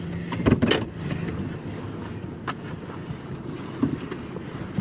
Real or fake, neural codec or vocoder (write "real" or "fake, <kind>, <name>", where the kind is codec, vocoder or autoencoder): real